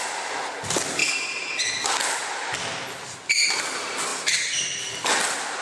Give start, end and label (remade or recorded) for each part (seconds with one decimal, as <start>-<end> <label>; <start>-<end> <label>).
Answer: 0.0-4.1 recorded; 4.1-4.9 remade; 4.9-5.6 recorded